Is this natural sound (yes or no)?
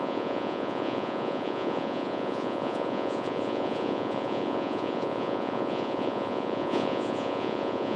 no